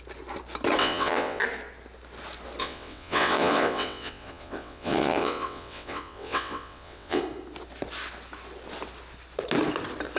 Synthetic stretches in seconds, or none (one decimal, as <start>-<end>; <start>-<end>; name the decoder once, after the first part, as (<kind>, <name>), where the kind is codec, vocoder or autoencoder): 0.8-1.4 (vocoder, WaveNeXt); 2.6-7.2